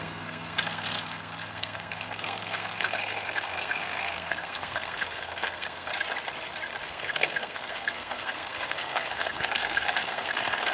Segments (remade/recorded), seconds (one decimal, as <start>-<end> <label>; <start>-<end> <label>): 0.0-5.9 remade; 5.9-6.9 recorded; 6.9-10.7 remade